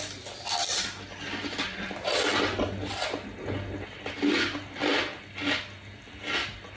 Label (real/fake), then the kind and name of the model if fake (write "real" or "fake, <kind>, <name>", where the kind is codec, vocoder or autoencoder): real